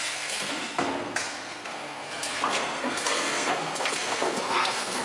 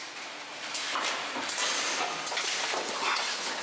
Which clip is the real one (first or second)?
second